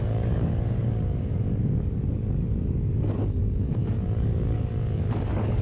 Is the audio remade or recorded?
remade